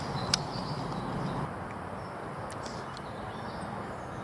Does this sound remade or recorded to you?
recorded